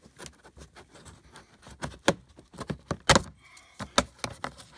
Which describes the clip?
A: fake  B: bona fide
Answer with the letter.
B